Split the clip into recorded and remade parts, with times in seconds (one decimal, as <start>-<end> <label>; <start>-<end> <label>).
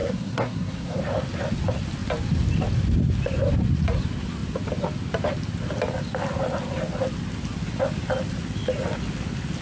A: 0.0-1.0 remade; 1.0-9.6 recorded